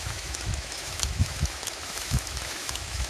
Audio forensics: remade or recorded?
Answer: remade